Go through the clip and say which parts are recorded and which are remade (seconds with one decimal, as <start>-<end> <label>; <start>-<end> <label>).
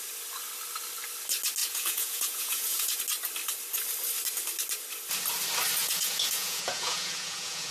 0.0-1.6 recorded; 1.6-3.0 remade; 3.0-5.8 recorded; 5.8-7.7 remade